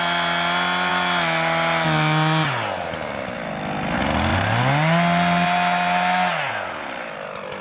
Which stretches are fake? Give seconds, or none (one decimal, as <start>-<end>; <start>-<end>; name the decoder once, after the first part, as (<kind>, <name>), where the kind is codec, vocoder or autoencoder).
none